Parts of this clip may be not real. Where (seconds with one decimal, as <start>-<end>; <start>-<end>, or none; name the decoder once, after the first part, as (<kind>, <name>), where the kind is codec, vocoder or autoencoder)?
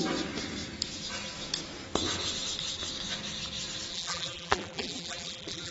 3.9-5.7 (vocoder, BigVGAN v2)